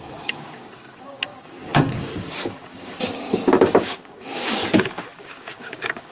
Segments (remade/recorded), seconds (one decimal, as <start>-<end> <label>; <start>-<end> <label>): 0.0-4.6 remade; 4.6-5.2 recorded; 5.2-6.1 remade